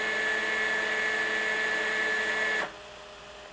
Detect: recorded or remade recorded